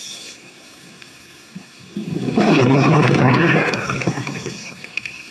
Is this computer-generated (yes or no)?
yes